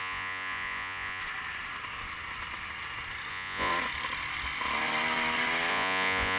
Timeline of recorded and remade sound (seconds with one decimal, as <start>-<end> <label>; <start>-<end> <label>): 0.0-1.2 remade; 1.2-3.3 recorded; 3.3-3.7 remade; 3.7-5.7 recorded; 5.7-6.4 remade